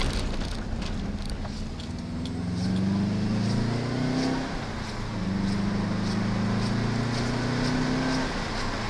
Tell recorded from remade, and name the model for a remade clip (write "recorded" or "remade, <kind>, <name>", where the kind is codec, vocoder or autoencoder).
recorded